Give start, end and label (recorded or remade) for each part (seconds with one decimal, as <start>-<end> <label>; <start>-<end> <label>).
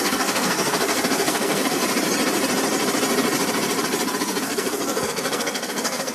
0.0-1.8 remade; 1.8-4.2 recorded; 4.2-6.1 remade